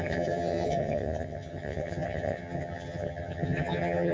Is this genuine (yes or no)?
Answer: no